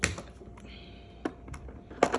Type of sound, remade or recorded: recorded